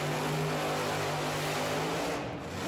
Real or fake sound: real